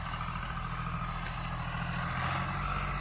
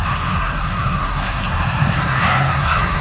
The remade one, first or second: second